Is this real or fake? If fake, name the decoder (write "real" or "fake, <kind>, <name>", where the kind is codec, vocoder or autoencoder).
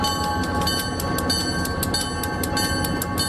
real